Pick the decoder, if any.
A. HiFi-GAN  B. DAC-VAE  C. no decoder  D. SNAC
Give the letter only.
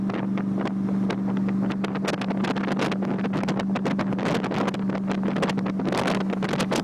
C